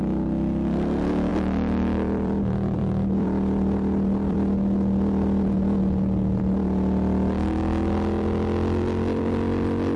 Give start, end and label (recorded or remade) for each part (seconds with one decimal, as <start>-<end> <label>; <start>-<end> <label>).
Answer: 0.0-1.3 recorded; 1.3-6.4 remade; 6.4-10.0 recorded